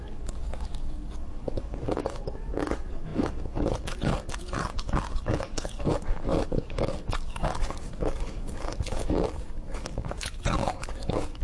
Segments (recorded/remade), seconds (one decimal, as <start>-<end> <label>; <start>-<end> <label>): 0.0-11.4 remade